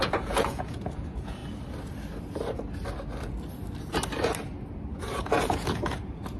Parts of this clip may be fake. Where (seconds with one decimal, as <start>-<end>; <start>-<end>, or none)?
0.0-1.4; 5.2-6.4